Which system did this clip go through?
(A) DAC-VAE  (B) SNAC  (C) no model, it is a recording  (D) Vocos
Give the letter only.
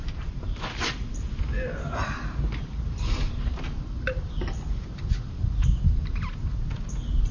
C